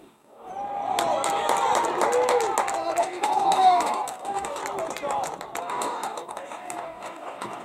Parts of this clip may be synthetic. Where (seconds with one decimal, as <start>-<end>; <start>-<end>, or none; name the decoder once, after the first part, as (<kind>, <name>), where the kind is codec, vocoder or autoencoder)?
0.0-0.5 (codec, DAC); 3.0-4.6; 5.6-7.6